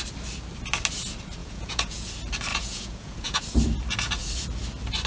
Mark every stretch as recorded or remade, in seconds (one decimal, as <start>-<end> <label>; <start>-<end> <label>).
0.0-1.4 recorded; 1.4-2.1 remade; 2.1-2.5 recorded; 2.5-3.4 remade; 3.4-5.1 recorded